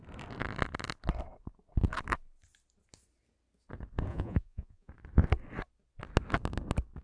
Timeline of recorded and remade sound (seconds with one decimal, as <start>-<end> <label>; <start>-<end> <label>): 0.0-4.1 recorded; 4.1-4.9 remade; 4.9-7.0 recorded